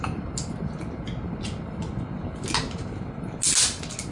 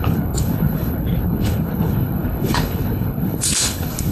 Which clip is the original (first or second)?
first